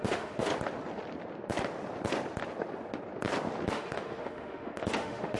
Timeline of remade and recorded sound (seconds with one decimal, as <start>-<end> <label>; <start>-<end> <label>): 0.0-0.5 remade; 0.5-3.7 recorded; 3.7-5.4 remade